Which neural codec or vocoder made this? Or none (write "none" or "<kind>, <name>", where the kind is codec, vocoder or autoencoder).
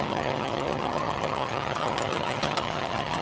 vocoder, HiFi-GAN